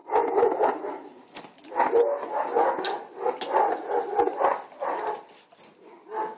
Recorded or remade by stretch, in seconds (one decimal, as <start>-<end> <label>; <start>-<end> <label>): 0.0-6.4 recorded